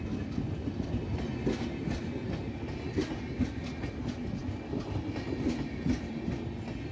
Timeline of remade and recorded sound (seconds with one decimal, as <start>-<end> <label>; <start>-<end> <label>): 0.0-6.9 recorded